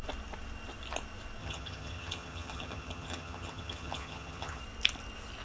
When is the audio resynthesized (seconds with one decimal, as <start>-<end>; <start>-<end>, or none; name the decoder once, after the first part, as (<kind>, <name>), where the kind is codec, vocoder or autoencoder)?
1.4-4.6 (vocoder, HiFi-GAN)